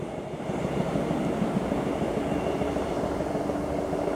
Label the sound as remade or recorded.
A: recorded